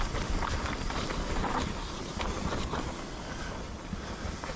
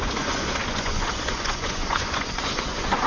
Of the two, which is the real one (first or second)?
first